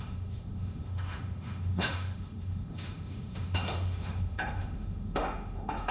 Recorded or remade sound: remade